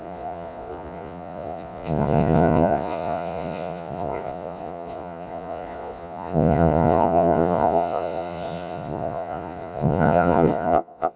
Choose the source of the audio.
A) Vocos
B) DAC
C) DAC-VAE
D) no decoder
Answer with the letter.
A